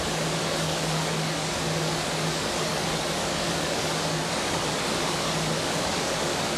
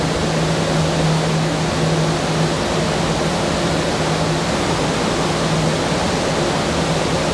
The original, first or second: second